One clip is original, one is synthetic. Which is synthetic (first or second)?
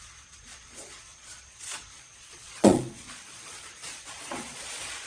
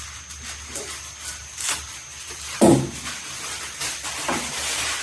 first